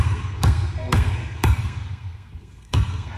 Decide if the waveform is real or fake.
fake